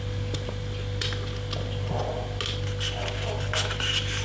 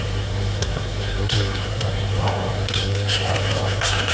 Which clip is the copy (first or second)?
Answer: second